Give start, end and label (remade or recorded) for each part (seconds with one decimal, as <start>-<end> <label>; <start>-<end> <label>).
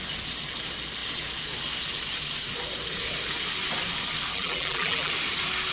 0.0-4.3 recorded; 4.3-5.1 remade; 5.1-5.7 recorded